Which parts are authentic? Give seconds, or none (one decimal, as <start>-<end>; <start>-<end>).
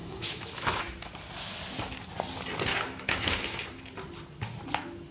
0.8-2.7; 3.6-5.1